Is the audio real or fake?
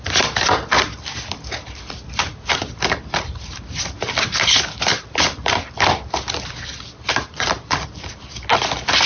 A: real